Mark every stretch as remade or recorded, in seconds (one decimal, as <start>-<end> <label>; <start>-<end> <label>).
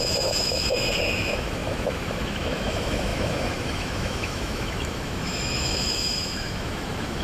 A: 0.0-7.2 remade